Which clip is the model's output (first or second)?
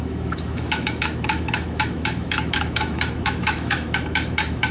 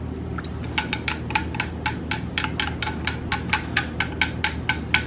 first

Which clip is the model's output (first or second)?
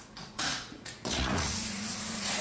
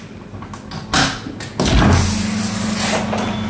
first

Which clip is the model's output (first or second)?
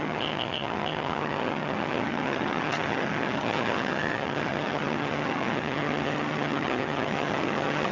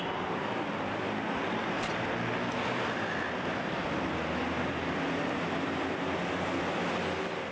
first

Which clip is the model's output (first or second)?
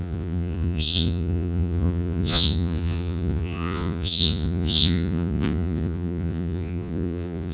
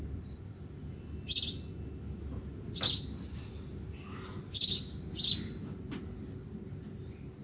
first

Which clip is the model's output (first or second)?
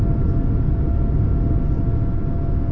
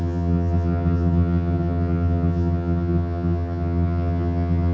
second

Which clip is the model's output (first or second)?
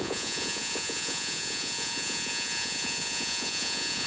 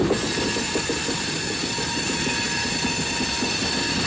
first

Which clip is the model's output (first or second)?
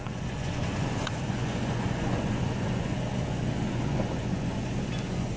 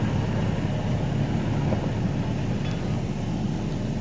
first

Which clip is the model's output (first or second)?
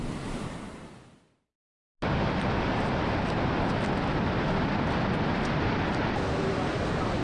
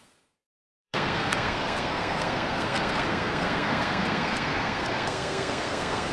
second